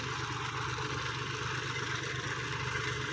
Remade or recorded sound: recorded